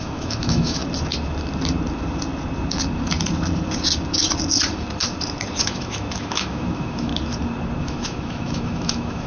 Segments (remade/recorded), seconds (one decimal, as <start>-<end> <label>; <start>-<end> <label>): 0.0-0.8 remade; 0.8-5.6 recorded; 5.6-7.1 remade; 7.1-7.8 recorded; 7.8-9.3 remade